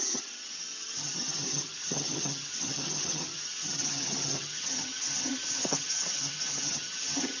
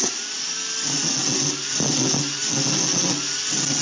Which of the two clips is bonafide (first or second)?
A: second